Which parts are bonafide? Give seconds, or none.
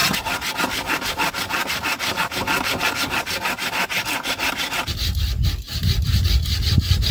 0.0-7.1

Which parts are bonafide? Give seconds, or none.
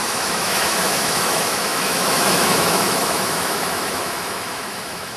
none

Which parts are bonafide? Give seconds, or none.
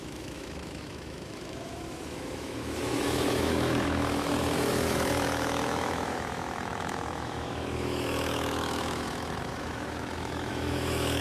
none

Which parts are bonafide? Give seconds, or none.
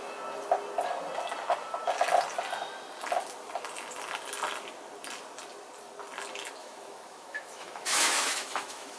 0.0-6.6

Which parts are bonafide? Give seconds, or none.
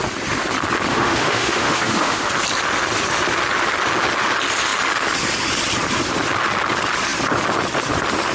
0.0-0.9; 2.3-8.3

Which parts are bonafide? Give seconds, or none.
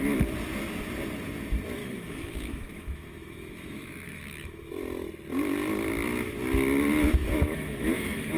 0.0-1.8; 4.7-7.2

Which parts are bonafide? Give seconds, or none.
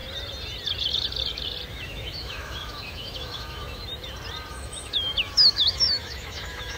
0.0-1.7; 3.8-4.5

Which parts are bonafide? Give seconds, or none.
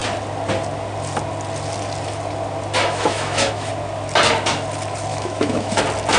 0.0-2.8; 3.7-5.1; 5.8-6.2